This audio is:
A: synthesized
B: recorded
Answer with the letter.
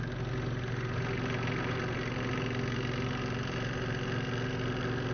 B